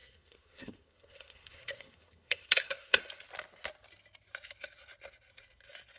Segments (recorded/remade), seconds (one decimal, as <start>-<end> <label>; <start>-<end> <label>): 0.0-3.0 remade; 3.0-6.0 recorded